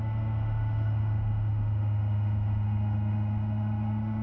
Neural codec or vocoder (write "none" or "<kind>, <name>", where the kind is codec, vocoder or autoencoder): autoencoder, DAC-VAE